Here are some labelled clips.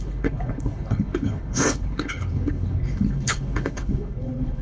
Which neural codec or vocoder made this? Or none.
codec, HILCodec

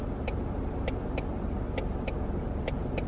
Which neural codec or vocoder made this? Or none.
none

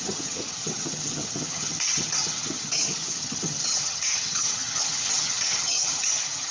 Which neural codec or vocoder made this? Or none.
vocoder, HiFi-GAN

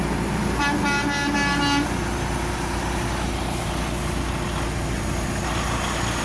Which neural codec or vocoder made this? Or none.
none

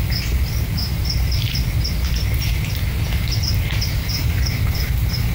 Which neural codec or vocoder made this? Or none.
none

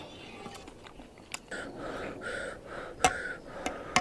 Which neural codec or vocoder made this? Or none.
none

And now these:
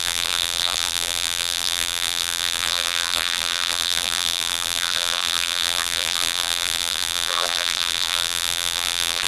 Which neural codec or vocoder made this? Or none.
vocoder, BigVGAN v2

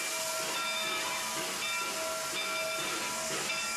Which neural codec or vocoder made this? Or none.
none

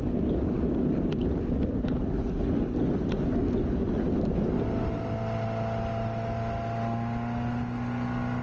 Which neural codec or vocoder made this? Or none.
none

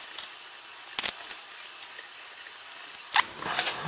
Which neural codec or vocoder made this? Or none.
none